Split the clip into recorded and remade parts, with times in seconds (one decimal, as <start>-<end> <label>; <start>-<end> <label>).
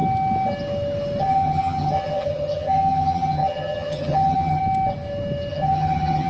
0.0-1.2 recorded; 1.2-4.6 remade; 4.6-5.5 recorded; 5.5-6.3 remade